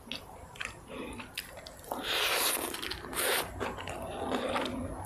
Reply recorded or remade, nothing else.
recorded